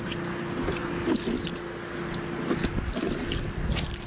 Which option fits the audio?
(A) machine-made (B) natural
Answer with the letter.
B